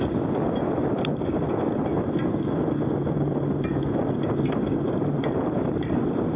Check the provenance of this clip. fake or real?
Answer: real